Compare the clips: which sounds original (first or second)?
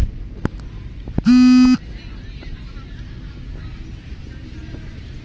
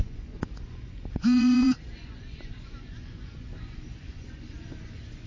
first